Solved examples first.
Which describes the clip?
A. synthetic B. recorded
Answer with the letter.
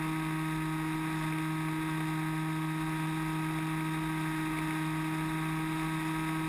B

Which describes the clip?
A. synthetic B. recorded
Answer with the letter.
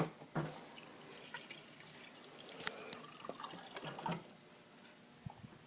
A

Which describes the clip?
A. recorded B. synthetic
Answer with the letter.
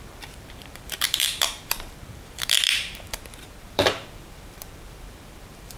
B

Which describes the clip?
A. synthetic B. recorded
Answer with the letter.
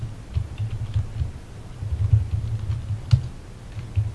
B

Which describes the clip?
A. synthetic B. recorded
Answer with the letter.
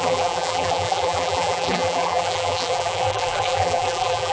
A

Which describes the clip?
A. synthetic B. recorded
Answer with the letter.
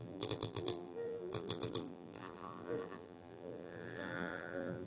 A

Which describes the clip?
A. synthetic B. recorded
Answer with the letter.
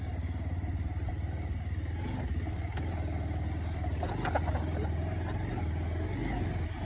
B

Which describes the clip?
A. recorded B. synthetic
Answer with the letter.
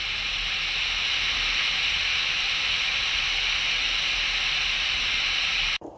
A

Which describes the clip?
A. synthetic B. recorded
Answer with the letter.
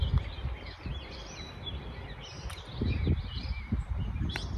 B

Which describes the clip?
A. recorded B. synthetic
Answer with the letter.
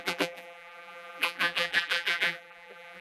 B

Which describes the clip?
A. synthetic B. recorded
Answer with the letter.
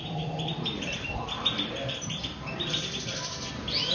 A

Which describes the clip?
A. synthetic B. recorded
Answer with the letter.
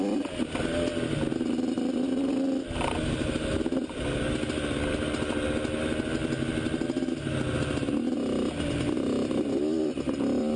B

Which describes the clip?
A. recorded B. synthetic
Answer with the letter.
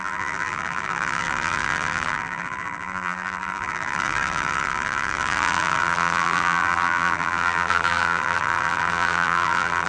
B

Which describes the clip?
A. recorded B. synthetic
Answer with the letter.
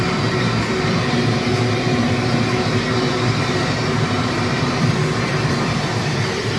B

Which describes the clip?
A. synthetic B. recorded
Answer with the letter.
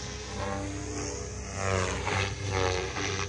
B